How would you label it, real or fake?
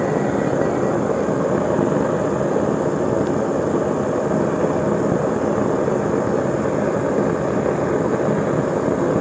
real